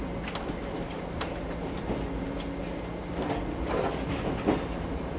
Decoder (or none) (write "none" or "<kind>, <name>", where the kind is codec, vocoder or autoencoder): none